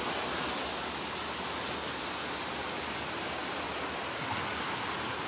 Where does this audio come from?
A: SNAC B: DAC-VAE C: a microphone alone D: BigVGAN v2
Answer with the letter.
C